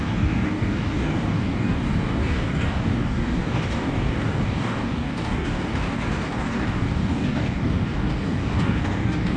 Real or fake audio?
fake